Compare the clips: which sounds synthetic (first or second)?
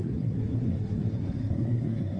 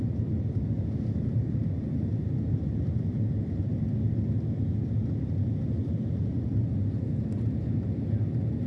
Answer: first